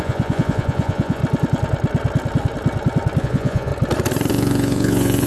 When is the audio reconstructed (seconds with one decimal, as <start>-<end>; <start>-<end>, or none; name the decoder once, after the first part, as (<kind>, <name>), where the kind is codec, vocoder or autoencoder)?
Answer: 0.0-1.2 (vocoder, Vocos); 3.2-3.7; 4.3-5.3